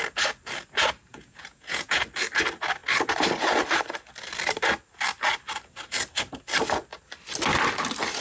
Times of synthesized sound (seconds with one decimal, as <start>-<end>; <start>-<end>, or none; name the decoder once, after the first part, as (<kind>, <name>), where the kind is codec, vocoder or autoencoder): 1.1-2.0 (vocoder, Vocos)